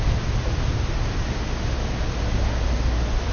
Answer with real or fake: real